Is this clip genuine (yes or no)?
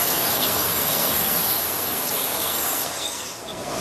no